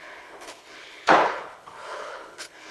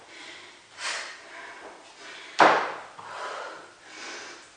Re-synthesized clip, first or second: first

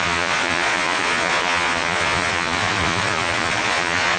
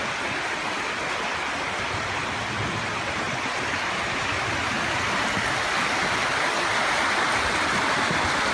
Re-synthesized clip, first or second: first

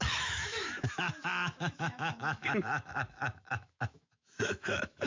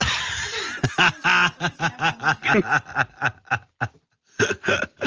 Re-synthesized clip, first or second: first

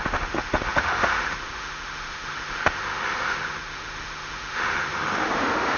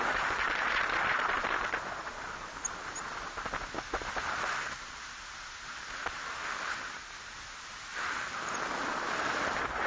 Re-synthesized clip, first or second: first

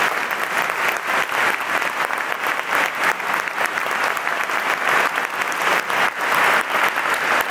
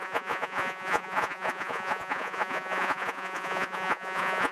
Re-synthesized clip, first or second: second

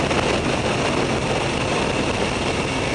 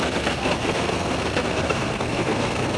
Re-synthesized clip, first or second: second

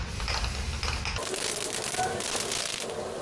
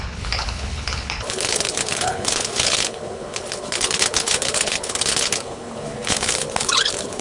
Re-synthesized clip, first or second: second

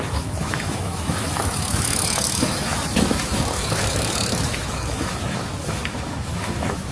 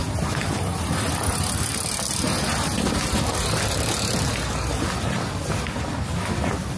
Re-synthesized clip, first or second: first